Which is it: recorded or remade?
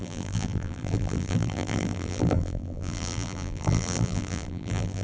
remade